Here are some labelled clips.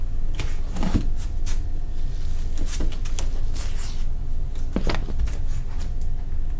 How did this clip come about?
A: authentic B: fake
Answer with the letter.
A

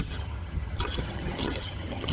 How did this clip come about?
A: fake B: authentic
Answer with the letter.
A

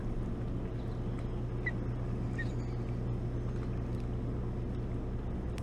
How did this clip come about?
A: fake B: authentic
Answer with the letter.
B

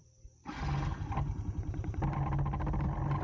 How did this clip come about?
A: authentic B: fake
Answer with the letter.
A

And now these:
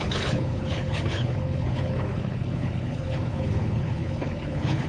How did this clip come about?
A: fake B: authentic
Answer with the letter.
A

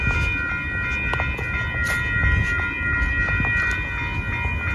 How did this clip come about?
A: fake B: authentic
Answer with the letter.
B